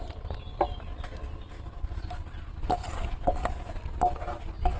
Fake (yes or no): no